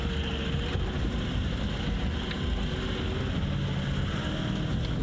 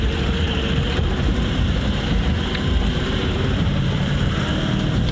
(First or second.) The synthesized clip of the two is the second